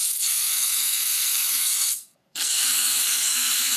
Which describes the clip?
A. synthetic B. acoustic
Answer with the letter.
A